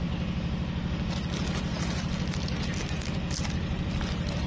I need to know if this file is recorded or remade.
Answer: remade